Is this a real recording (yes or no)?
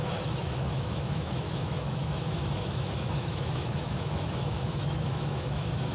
no